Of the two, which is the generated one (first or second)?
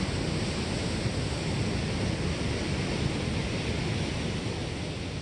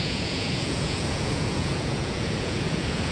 second